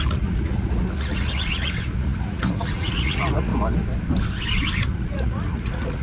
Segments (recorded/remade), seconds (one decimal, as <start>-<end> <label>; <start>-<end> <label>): 0.0-3.5 remade; 3.5-4.7 recorded; 4.7-6.0 remade